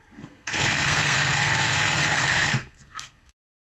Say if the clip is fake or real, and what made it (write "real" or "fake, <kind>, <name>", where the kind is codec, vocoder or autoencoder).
fake, codec, SNAC